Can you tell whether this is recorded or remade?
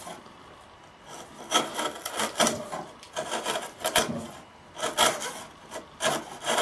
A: remade